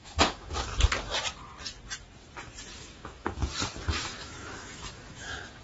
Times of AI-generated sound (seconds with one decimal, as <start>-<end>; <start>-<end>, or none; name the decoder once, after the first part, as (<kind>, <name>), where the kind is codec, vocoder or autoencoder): 0.0-0.7 (autoencoder, DAC-VAE); 2.8-3.4; 3.9-5.6